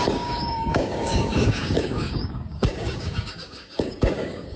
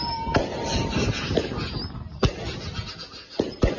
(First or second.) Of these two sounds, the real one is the second